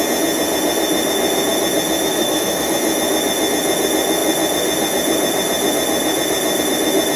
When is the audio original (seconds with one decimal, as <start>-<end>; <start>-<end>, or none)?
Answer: 0.0-2.1; 2.7-7.2